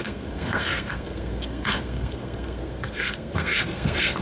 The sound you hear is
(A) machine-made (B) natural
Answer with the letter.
A